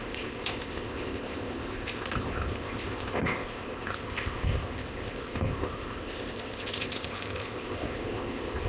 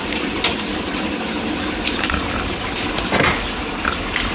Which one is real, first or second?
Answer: second